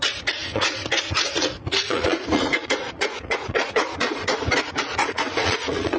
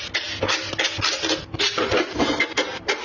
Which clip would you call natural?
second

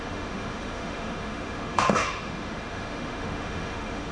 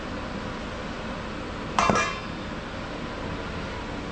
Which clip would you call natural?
second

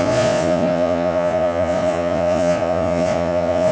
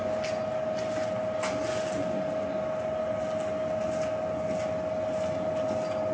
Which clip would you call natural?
second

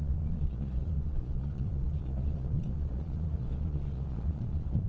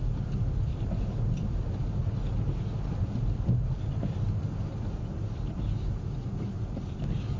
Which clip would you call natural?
second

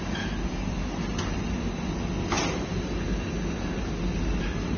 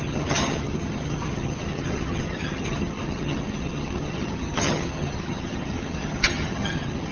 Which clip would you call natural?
first